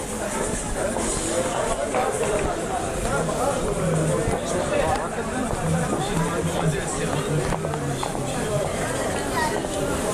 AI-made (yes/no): no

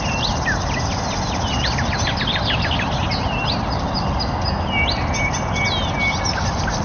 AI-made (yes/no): no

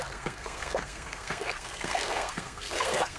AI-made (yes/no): yes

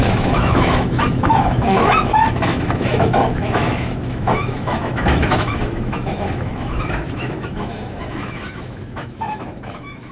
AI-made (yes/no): yes